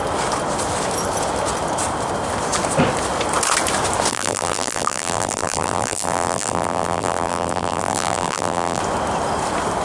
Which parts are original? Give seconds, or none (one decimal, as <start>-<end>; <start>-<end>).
0.0-4.1; 8.8-9.8